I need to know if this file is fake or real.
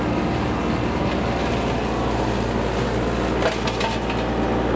real